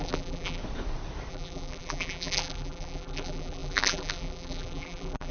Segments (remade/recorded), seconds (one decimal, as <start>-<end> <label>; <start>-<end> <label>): 0.0-0.6 remade; 0.6-1.3 recorded; 1.3-5.3 remade